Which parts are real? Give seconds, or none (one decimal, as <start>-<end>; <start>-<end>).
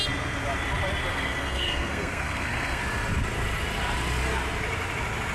0.0-1.1; 2.8-5.3